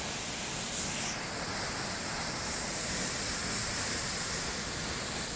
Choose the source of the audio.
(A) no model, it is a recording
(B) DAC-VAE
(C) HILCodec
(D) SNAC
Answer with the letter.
A